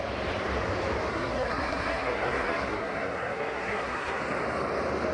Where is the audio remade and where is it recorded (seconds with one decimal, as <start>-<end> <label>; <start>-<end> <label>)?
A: 0.0-1.1 recorded; 1.1-4.2 remade; 4.2-5.1 recorded